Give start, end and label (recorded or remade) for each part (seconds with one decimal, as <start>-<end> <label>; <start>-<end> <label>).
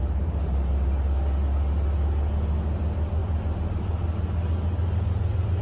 0.0-5.6 recorded